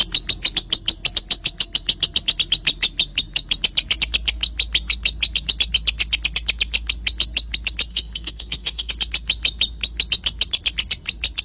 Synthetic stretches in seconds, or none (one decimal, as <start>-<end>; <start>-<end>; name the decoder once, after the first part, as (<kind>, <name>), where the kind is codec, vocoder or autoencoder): 7.9-8.9 (codec, SNAC)